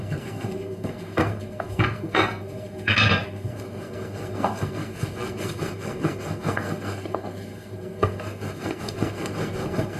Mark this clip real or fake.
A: fake